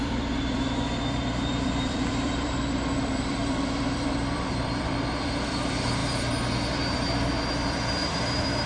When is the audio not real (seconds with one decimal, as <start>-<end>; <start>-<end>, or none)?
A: 0.0-6.0; 7.5-8.7